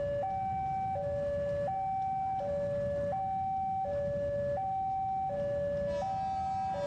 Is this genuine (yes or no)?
yes